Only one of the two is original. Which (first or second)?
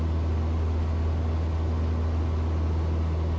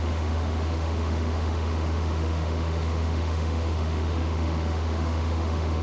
first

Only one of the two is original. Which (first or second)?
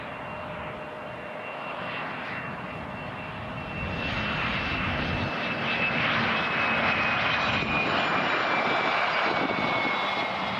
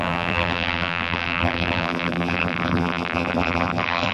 first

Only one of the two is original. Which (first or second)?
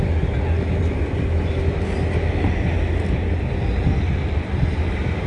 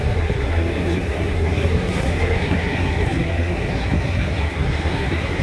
first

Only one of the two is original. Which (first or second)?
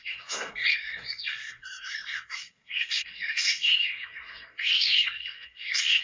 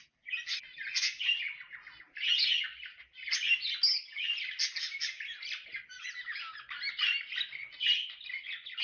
second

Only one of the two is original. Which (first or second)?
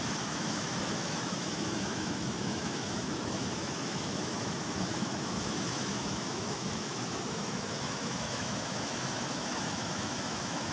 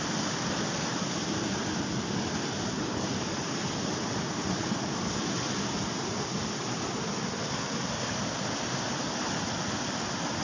second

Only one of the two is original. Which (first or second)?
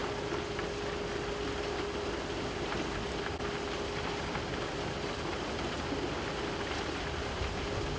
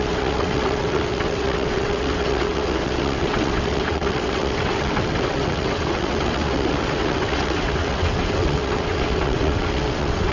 first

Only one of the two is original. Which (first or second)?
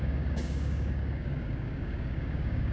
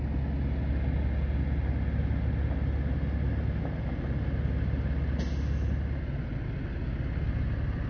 second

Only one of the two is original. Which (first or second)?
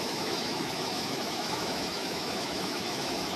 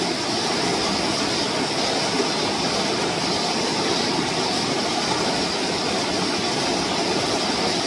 second